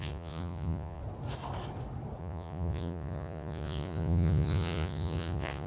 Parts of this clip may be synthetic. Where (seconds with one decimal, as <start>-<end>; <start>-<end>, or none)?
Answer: 0.0-1.0; 2.2-5.7